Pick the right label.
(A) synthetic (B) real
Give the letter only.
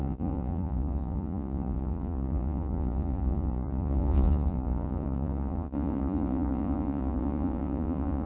A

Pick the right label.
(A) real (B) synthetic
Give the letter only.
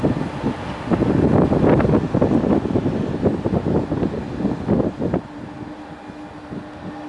A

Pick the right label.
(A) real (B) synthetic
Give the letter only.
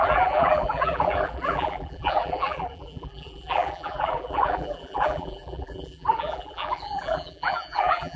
B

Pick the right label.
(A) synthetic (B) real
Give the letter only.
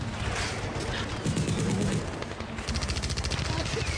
B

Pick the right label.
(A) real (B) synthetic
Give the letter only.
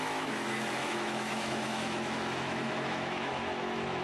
B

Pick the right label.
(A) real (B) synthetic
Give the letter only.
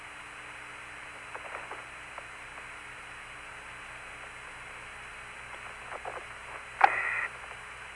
A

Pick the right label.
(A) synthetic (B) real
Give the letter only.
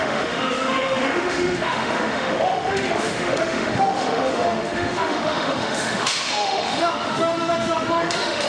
A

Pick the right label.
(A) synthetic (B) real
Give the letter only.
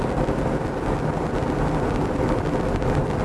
B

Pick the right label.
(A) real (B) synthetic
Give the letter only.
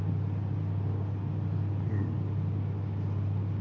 A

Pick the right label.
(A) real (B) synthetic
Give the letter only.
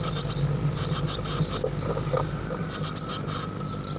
A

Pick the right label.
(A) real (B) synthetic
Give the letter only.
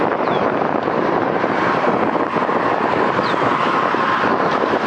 A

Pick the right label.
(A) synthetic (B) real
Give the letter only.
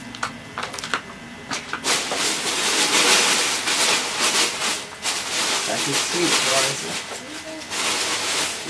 B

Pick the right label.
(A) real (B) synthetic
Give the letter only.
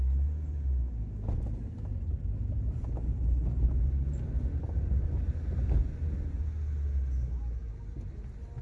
A